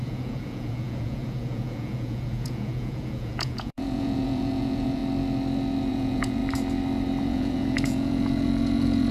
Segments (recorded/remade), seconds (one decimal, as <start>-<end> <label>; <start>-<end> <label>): 0.0-5.0 remade; 5.0-5.9 recorded; 5.9-6.4 remade; 6.4-7.2 recorded; 7.2-9.1 remade